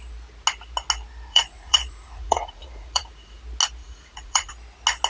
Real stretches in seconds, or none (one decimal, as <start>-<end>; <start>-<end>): 0.0-1.3; 3.4-3.8; 4.5-5.1